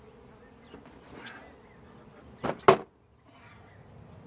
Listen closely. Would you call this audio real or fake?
real